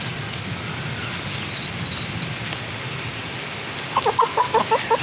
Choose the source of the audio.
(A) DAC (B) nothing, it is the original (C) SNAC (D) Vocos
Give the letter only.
B